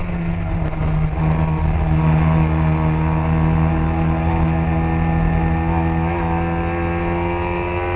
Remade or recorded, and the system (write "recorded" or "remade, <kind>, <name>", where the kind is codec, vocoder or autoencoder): recorded